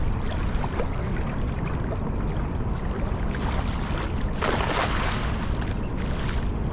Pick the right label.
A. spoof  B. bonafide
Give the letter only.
B